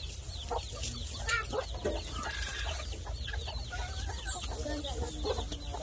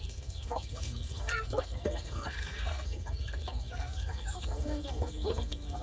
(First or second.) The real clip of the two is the first